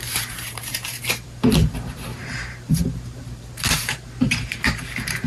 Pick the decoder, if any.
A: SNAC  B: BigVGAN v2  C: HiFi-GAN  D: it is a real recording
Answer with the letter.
B